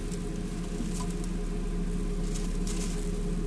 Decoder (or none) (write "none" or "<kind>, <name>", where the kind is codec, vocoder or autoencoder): none